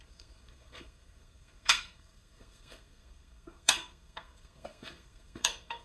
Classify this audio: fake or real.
fake